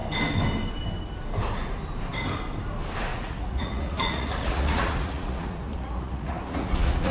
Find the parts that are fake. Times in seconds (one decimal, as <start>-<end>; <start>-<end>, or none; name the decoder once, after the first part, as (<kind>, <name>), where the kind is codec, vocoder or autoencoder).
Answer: 3.1-7.1 (vocoder, Vocos)